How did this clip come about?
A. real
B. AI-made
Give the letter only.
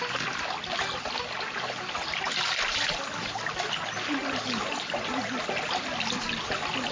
A